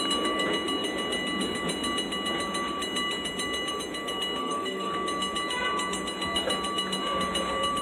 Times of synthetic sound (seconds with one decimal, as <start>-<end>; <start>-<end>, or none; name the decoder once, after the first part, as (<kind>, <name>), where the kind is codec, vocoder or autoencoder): 4.4-4.9 (codec, SNAC)